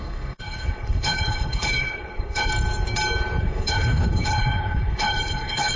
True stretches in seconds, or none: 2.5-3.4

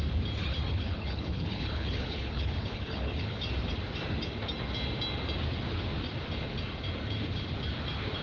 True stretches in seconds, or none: 0.0-0.4; 3.4-8.2

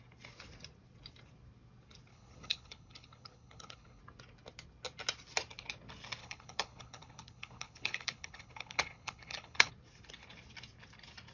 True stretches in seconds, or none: 0.0-2.1; 4.0-6.2; 9.7-11.3